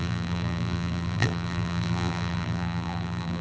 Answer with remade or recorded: remade